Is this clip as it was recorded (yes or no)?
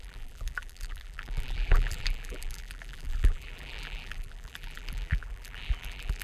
no